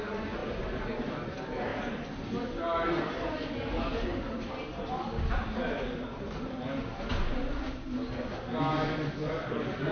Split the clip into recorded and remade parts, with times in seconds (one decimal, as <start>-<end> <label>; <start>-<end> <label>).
0.0-9.9 recorded